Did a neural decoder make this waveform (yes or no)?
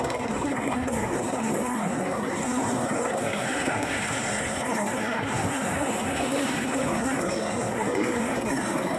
yes